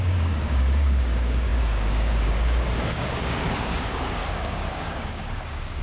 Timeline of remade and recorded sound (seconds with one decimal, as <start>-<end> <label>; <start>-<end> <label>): 0.0-5.8 remade